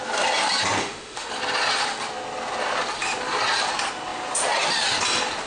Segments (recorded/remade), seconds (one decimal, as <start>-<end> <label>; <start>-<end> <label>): 0.0-0.8 recorded; 0.8-1.3 remade; 1.3-5.5 recorded

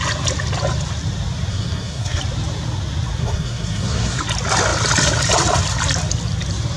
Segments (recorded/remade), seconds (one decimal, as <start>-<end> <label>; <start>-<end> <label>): 0.0-1.5 recorded; 1.5-2.2 remade; 2.2-3.2 recorded; 3.2-4.2 remade; 4.2-6.8 recorded

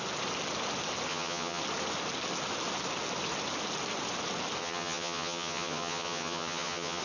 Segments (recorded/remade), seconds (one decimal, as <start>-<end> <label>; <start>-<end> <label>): 0.0-1.1 recorded; 1.1-1.6 remade; 1.6-4.6 recorded; 4.6-7.0 remade

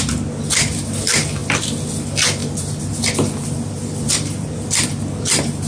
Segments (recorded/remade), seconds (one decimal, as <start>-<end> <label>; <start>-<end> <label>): 0.0-1.4 recorded; 1.4-1.9 remade; 1.9-2.4 recorded; 2.4-4.9 remade; 4.9-5.7 recorded

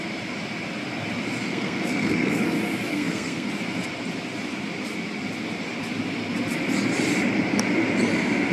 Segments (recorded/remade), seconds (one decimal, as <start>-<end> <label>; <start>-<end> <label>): 0.0-1.5 recorded; 1.5-2.4 remade; 2.4-2.9 recorded; 2.9-3.5 remade; 3.5-8.5 recorded

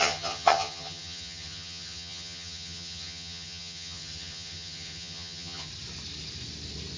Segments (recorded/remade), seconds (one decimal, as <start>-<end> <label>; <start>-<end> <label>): 0.0-5.7 remade; 5.7-7.0 recorded